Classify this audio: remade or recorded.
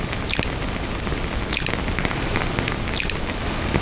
recorded